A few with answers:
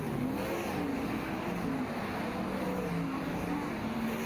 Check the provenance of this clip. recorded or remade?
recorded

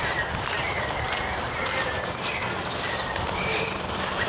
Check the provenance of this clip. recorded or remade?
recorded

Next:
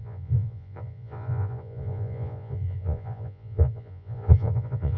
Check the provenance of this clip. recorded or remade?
remade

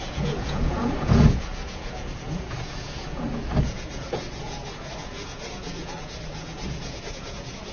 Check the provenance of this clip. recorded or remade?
remade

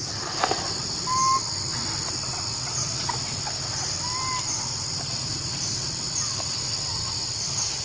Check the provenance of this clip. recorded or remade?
recorded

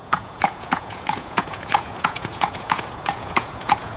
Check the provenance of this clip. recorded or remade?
remade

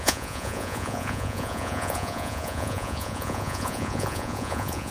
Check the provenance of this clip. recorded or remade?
remade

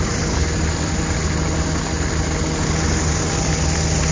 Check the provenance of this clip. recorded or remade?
recorded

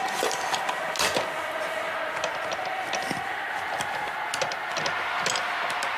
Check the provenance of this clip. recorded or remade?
recorded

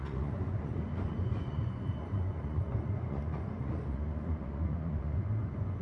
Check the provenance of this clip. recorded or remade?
remade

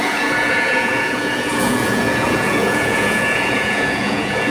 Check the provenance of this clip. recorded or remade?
remade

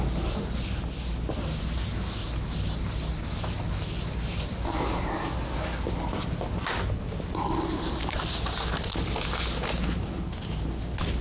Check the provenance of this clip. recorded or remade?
recorded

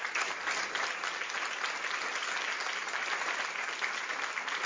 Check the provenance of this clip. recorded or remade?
recorded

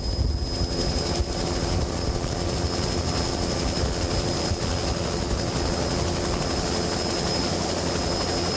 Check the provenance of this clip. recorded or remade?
recorded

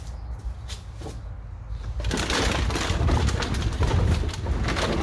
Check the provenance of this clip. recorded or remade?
recorded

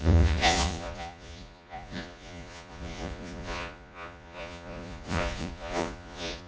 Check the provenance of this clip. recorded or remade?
remade